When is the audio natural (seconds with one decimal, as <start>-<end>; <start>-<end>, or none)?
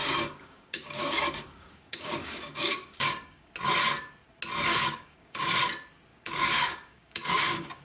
3.5-4.7; 5.6-6.1